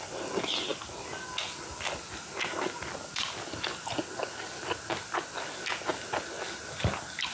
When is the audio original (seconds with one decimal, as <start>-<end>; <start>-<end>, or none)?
0.0-7.3